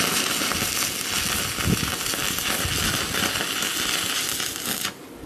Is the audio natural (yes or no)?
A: yes